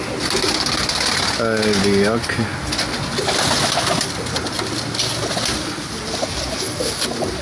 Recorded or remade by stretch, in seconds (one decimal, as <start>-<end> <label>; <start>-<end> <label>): 0.0-7.4 recorded